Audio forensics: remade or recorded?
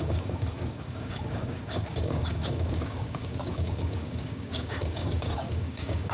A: remade